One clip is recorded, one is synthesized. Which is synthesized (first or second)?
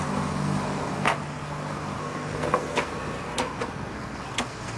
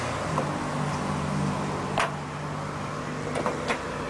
first